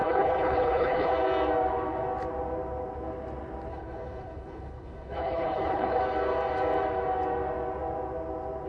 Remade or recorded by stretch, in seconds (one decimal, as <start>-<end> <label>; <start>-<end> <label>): 0.0-1.1 remade; 1.1-3.7 recorded; 3.7-6.0 remade; 6.0-8.7 recorded